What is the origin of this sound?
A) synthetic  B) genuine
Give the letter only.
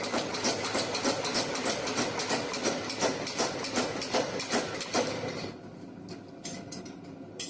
B